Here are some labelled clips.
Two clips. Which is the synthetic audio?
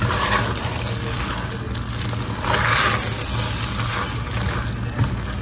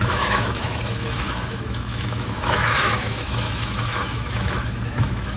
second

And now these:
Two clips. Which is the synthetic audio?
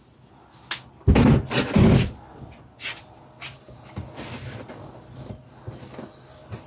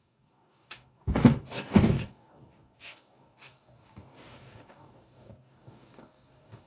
second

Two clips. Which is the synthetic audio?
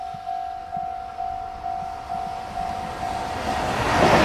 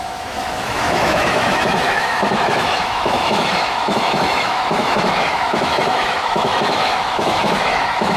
second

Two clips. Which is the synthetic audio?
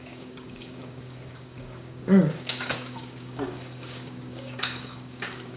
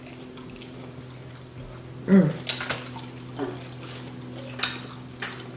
first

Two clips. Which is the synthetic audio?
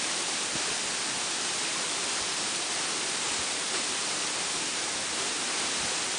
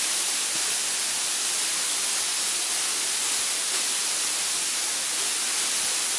first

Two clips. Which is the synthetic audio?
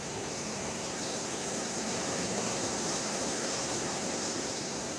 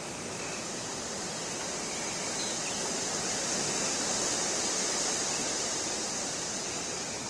first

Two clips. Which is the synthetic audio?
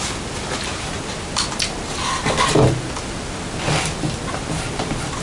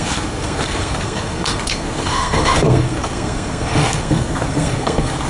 second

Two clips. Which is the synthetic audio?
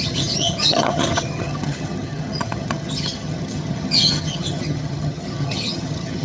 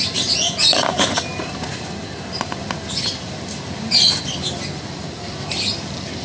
first